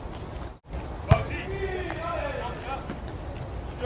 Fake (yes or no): no